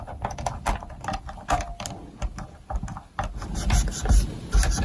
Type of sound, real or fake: real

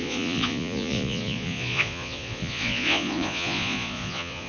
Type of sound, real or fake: fake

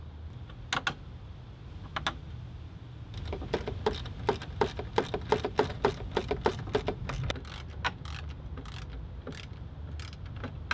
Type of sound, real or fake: real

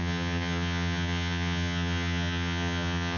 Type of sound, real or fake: fake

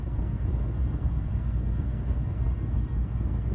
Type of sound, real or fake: fake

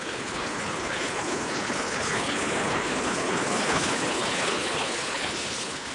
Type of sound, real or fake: fake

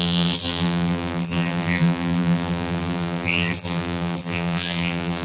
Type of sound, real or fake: fake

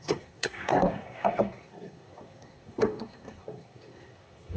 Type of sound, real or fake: fake